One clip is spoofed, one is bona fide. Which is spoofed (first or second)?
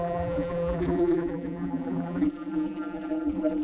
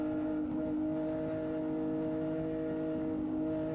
first